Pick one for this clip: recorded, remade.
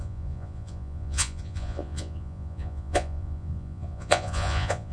remade